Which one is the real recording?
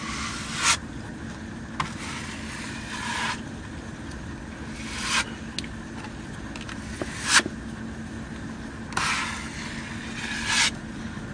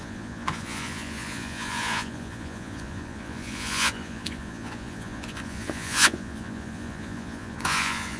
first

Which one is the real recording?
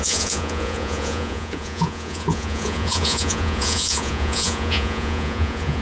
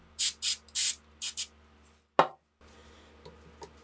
second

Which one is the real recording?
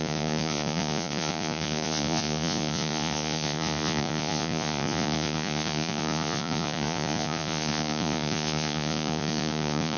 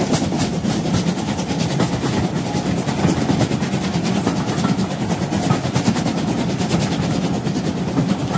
second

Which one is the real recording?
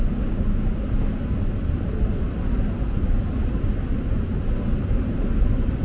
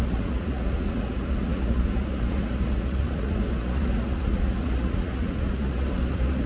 first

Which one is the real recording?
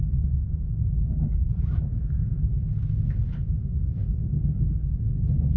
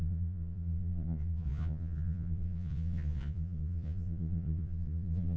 first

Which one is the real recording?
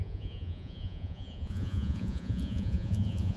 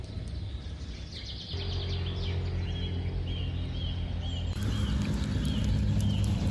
second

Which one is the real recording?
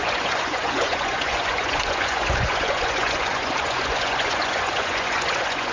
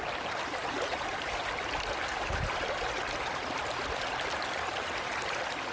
second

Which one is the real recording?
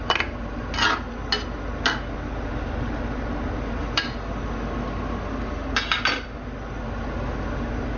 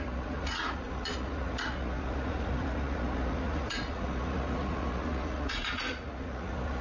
first